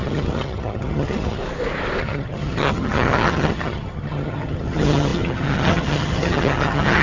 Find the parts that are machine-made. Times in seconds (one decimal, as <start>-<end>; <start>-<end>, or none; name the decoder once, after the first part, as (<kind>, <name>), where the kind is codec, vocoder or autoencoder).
0.0-1.4 (vocoder, HiFi-GAN); 2.0-7.0